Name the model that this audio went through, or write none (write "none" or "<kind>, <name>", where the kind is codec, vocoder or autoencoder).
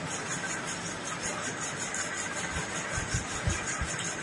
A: none